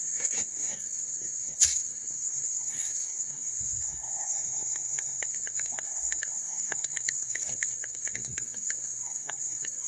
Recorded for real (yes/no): no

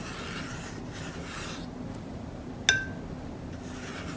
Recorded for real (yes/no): yes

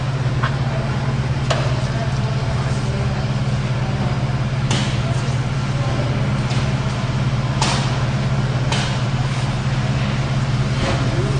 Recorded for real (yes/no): yes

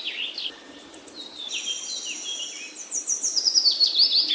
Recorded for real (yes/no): yes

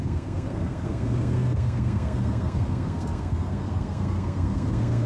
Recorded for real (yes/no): no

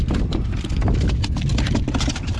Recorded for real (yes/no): yes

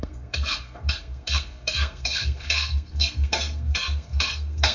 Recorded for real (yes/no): no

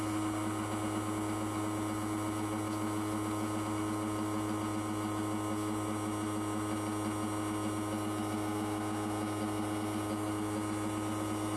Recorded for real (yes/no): yes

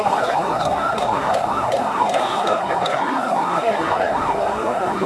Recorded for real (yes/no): no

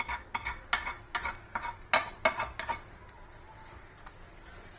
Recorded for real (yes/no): yes